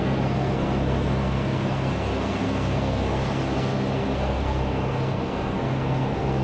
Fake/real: fake